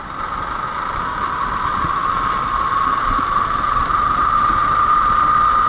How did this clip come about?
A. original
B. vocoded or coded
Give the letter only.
A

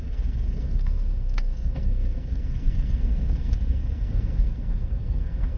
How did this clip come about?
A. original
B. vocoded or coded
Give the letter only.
B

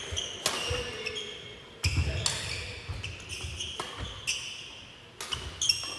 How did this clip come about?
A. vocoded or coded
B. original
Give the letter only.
B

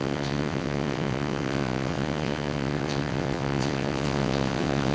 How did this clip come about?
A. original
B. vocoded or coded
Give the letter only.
B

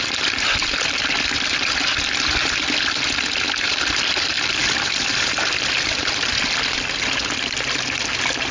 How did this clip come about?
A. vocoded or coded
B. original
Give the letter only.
B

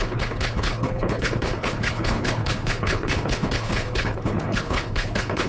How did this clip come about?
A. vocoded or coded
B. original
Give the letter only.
A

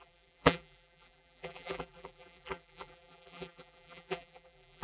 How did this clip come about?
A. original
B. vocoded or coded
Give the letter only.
B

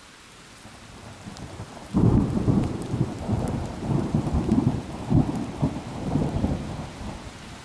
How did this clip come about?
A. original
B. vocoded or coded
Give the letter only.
B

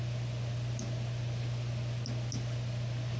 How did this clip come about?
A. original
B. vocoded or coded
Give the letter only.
A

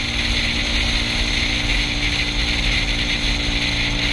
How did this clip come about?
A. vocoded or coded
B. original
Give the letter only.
B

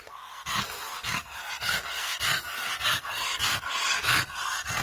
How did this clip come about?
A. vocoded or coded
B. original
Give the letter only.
A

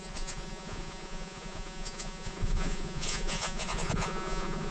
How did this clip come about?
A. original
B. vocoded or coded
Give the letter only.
B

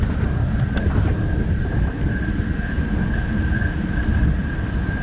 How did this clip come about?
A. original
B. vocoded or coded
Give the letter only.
A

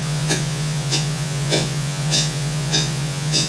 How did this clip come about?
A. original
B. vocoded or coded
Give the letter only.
B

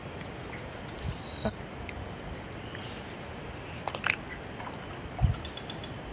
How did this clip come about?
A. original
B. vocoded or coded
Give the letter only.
A